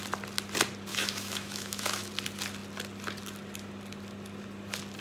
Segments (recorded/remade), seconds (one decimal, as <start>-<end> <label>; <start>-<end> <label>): 0.0-0.9 recorded; 0.9-2.1 remade; 2.1-5.0 recorded